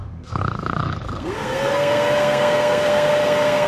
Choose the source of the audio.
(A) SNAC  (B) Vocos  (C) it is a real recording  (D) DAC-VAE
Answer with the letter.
A